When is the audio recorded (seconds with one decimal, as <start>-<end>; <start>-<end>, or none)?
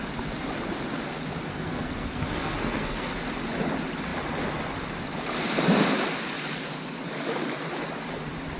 0.0-1.5; 3.1-8.6